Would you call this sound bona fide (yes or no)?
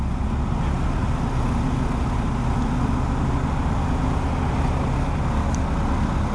yes